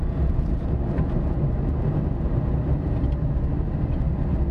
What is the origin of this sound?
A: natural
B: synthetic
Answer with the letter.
A